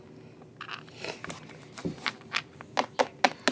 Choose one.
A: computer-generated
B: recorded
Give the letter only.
B